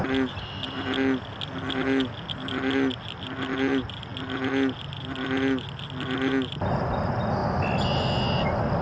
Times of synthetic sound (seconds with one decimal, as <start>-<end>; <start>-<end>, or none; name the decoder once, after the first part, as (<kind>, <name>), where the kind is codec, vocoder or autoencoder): none